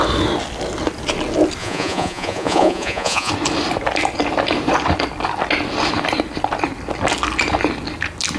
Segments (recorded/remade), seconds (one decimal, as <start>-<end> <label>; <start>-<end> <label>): 0.0-1.6 recorded; 1.6-3.3 remade; 3.3-8.4 recorded